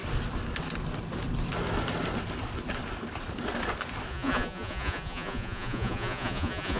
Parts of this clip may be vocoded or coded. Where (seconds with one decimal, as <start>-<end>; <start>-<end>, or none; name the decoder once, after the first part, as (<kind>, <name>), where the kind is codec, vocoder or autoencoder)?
4.1-6.8 (vocoder, Vocos)